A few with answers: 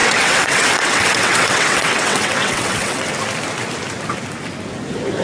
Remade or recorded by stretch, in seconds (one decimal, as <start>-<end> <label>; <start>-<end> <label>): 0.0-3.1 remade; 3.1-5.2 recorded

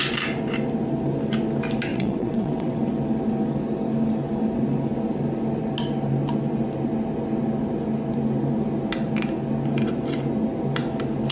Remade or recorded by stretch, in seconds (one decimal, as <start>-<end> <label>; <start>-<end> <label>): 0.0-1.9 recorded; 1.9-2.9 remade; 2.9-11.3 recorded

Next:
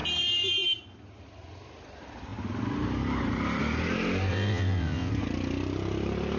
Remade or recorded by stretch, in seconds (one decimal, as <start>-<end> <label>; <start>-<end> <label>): 0.0-4.3 recorded; 4.3-5.1 remade; 5.1-6.4 recorded

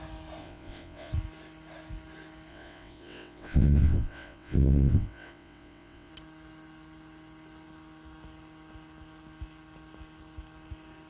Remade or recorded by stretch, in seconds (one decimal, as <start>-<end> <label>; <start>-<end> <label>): 0.0-0.4 recorded; 0.4-1.1 remade; 1.1-2.5 recorded; 2.5-6.1 remade; 6.1-11.1 recorded

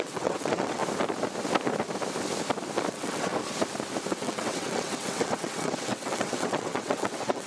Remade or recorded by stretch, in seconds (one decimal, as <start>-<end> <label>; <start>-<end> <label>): 0.0-0.8 remade; 0.8-2.9 recorded; 2.9-3.3 remade; 3.3-4.1 recorded; 4.1-7.5 remade

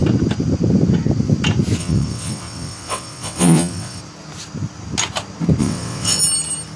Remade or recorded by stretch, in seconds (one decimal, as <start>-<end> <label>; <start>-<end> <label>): 0.0-1.8 recorded; 1.8-4.0 remade; 4.0-5.6 recorded; 5.6-6.2 remade; 6.2-6.8 recorded